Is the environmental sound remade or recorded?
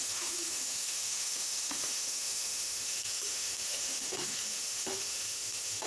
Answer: remade